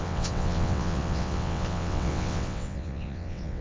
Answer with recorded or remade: remade